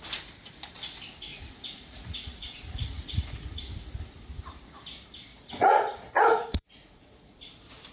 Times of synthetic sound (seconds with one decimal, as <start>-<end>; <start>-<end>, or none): 1.3-3.6; 5.3-7.4